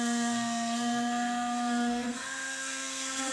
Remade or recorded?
remade